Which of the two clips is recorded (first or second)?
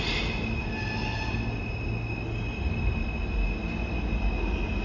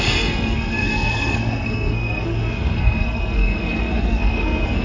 first